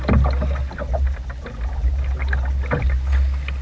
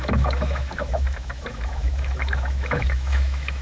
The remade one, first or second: second